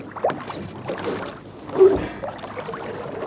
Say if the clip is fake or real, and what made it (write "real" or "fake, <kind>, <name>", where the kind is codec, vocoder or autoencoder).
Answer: real